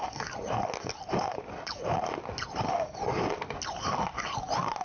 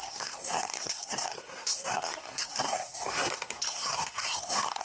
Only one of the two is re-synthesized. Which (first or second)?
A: second